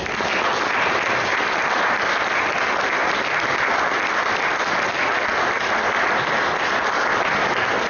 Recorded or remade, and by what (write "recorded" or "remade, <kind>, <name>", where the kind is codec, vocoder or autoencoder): recorded